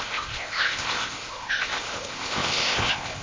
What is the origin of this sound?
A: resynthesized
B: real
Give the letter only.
A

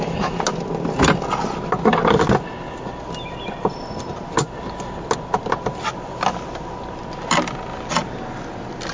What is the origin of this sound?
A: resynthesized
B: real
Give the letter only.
B